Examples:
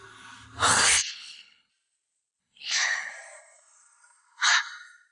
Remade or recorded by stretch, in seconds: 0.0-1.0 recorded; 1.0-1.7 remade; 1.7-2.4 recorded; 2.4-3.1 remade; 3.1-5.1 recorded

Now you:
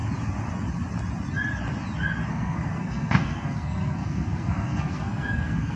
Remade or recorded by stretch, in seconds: 0.0-2.3 recorded; 2.3-5.8 remade

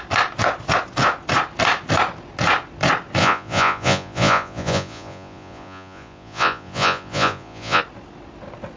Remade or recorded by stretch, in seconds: 0.0-3.2 recorded; 3.2-7.8 remade; 7.8-8.8 recorded

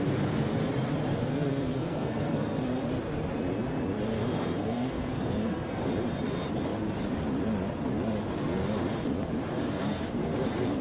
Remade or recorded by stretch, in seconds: 0.0-1.3 recorded; 1.3-2.6 remade; 2.6-4.4 recorded; 4.4-5.8 remade; 5.8-10.8 recorded